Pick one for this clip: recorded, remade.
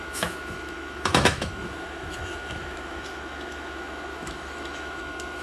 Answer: remade